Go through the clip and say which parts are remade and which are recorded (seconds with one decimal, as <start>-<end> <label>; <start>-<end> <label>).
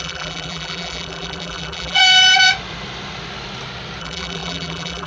0.0-2.0 remade; 2.0-4.0 recorded; 4.0-5.1 remade